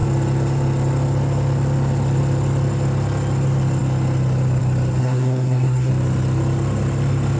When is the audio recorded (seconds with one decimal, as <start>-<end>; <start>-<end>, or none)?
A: 0.0-5.0; 5.9-7.4